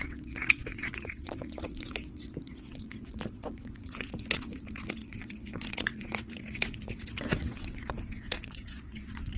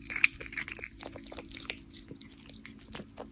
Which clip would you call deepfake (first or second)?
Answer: first